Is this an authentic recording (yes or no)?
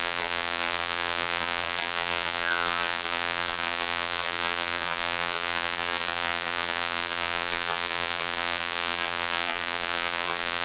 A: no